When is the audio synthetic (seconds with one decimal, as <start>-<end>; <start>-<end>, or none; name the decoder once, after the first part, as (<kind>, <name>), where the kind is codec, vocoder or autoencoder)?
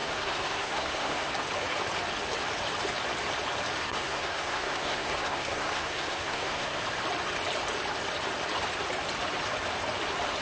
0.0-1.3 (codec, SNAC); 3.8-6.8